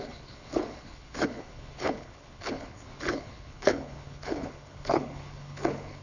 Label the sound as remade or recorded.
remade